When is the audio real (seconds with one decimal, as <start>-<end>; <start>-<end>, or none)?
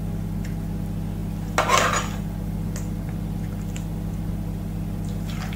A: 0.0-5.6